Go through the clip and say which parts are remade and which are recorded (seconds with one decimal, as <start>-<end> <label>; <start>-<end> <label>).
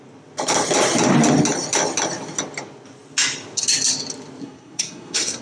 0.0-4.4 recorded; 4.4-5.4 remade